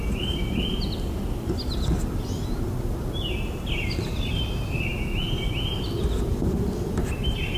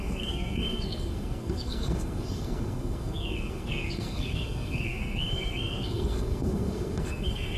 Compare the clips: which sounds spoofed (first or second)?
second